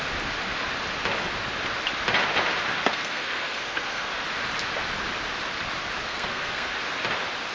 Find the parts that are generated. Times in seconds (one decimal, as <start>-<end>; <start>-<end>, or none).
2.8-4.1; 6.1-6.7